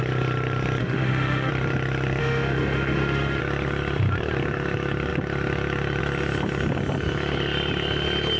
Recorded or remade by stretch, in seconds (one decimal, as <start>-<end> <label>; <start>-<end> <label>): 0.0-0.8 recorded; 0.8-1.5 remade; 1.5-2.2 recorded; 2.2-3.4 remade; 3.4-8.4 recorded